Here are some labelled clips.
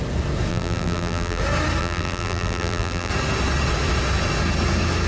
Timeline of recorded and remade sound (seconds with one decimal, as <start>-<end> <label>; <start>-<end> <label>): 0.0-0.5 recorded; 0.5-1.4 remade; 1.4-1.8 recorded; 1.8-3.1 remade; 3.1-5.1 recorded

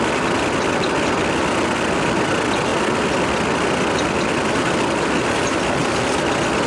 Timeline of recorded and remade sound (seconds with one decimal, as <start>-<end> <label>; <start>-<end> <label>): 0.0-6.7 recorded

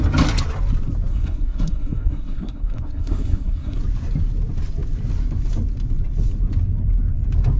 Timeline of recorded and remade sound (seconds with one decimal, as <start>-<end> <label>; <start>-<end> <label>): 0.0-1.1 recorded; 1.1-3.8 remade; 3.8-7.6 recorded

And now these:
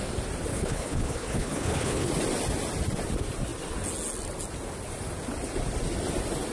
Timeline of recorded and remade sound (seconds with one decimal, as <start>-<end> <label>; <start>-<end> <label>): 0.0-0.5 recorded; 0.5-2.1 remade; 2.1-6.5 recorded

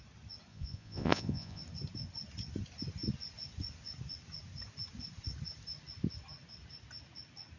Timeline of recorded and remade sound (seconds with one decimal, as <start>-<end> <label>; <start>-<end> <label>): 0.0-0.5 recorded; 0.5-1.6 remade; 1.6-7.6 recorded